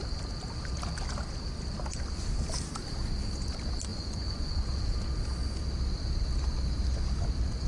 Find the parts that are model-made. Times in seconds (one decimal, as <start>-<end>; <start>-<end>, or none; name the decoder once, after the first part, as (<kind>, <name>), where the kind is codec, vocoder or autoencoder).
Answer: 3.9-4.8 (vocoder, Vocos)